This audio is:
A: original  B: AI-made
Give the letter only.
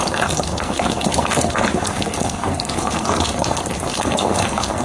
B